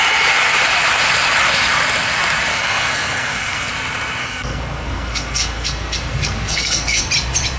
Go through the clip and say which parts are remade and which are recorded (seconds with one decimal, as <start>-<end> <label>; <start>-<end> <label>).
0.0-2.5 recorded; 2.5-3.7 remade; 3.7-4.2 recorded; 4.2-7.0 remade; 7.0-7.6 recorded